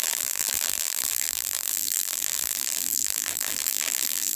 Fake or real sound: fake